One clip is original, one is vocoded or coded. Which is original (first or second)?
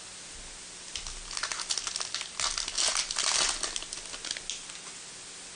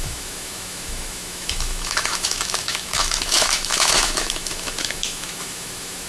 first